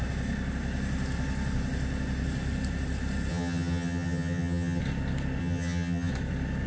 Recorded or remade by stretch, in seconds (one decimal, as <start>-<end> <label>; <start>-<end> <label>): 0.0-3.3 recorded; 3.3-4.8 remade; 4.8-5.4 recorded; 5.4-6.1 remade; 6.1-6.7 recorded